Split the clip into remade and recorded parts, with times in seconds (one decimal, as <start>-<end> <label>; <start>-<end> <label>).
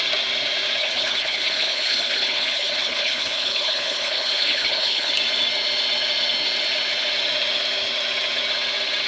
0.0-0.8 recorded; 0.8-5.1 remade; 5.1-9.1 recorded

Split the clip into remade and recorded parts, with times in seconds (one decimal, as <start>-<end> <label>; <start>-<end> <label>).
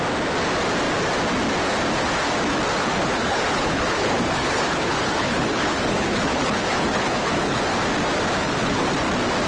0.0-2.8 recorded; 2.8-7.6 remade; 7.6-8.4 recorded; 8.4-8.9 remade; 8.9-9.5 recorded